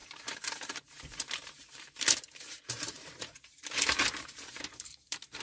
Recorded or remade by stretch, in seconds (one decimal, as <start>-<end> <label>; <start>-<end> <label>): 0.0-5.4 remade